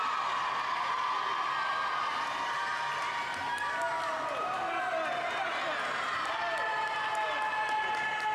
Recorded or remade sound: recorded